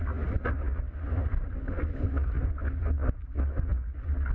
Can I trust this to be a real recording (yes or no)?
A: yes